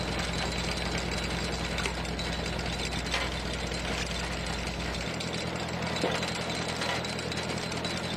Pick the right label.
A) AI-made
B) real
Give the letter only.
B